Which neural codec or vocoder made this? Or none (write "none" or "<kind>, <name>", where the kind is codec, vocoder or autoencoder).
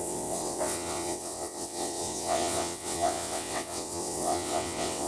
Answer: vocoder, WaveNeXt